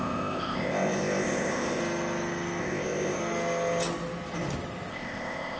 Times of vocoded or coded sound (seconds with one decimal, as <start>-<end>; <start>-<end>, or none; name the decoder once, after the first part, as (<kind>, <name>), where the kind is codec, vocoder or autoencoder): 0.0-1.8 (codec, ZipCodec); 2.6-3.2; 4.9-5.6